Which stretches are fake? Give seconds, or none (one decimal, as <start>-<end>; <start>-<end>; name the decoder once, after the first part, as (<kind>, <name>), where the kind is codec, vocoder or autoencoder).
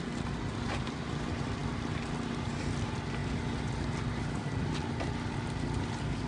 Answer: none